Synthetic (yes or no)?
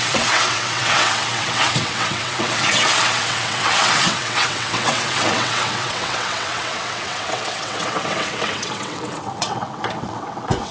yes